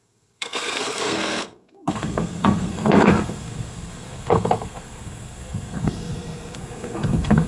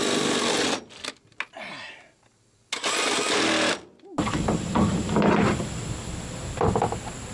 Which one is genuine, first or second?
second